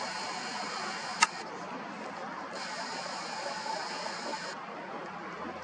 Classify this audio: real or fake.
real